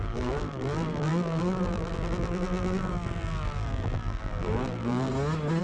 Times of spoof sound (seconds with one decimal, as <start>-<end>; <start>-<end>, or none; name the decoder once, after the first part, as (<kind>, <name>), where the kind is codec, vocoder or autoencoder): 0.0-5.1 (vocoder, BigVGAN v2)